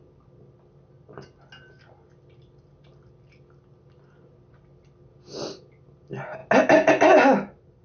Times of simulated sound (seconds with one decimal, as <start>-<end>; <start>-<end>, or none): none